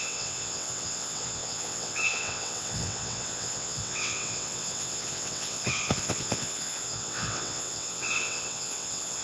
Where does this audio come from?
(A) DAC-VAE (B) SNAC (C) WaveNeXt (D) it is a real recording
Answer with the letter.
C